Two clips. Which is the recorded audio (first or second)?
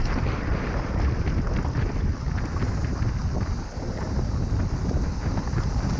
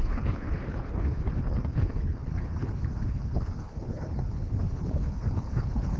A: first